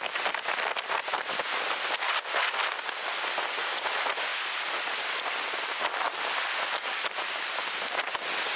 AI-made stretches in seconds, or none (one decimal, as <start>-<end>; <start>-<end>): 1.1-1.8